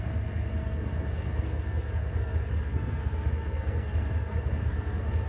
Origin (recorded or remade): remade